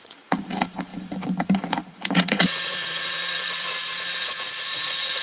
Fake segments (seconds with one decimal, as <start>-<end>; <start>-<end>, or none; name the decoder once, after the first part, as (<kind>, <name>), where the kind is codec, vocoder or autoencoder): 0.0-5.2 (vocoder, Vocos)